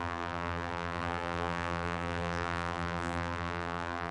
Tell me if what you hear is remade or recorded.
remade